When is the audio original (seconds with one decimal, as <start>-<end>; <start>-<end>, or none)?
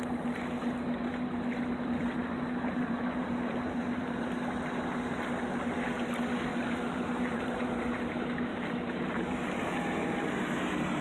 0.0-2.2; 4.3-6.5; 7.7-8.5; 10.4-11.0